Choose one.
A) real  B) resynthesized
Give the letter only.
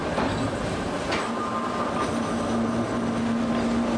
A